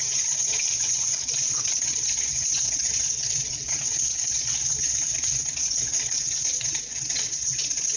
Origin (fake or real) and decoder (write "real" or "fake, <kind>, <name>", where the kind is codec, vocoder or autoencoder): fake, vocoder, WaveNeXt